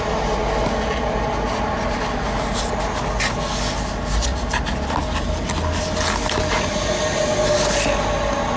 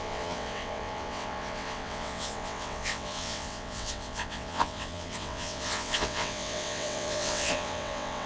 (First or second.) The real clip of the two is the first